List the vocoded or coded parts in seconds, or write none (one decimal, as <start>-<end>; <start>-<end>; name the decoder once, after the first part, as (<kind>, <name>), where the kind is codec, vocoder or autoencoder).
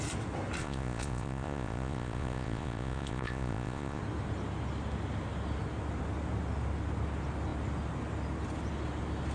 0.6-4.0 (vocoder, Vocos)